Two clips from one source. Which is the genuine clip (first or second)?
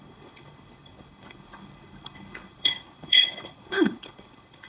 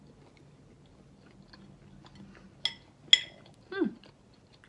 second